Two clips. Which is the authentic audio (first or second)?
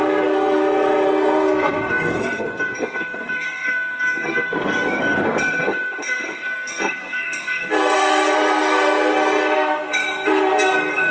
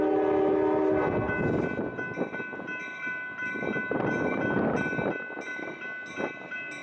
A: second